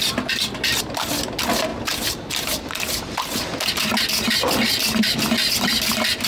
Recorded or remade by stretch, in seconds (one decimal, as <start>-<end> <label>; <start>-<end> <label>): 0.0-1.7 recorded; 1.7-5.5 remade; 5.5-6.3 recorded